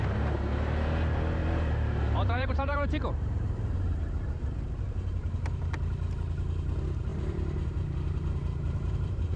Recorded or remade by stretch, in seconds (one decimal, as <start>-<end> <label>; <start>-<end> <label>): 0.0-1.4 recorded; 1.4-4.6 remade; 4.6-7.1 recorded; 7.1-9.4 remade

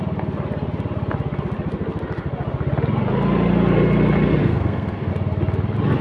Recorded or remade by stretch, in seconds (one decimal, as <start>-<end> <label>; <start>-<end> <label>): 0.0-4.4 recorded; 4.4-5.1 remade; 5.1-6.0 recorded

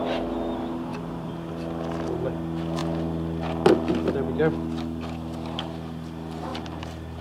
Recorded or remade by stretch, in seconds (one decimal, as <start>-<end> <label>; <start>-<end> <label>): 0.0-0.9 recorded; 0.9-1.5 remade; 1.5-6.5 recorded; 6.5-7.2 remade

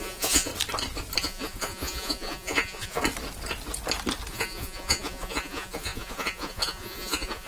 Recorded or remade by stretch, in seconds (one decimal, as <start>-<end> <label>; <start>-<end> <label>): 0.0-0.5 remade; 0.5-1.2 recorded; 1.2-3.0 remade; 3.0-4.3 recorded; 4.3-7.5 remade

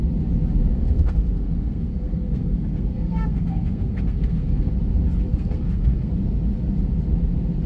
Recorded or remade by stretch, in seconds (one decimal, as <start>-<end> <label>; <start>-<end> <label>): 0.0-0.7 recorded; 0.7-4.7 remade; 4.7-5.3 recorded; 5.3-6.1 remade; 6.1-7.7 recorded

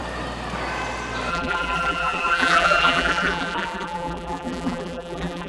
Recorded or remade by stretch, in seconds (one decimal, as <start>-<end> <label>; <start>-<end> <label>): 0.0-1.3 recorded; 1.3-5.5 remade

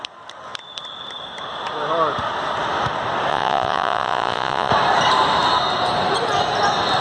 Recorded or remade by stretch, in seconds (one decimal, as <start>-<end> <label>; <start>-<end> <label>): 0.0-3.3 recorded; 3.3-4.7 remade; 4.7-7.0 recorded